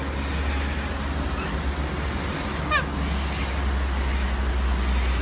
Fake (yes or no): no